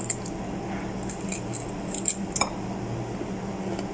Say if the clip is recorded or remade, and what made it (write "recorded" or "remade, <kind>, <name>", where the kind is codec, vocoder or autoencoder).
recorded